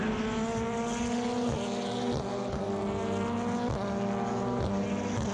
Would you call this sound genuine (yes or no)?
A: yes